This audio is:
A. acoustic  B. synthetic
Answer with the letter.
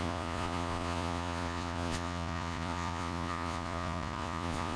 B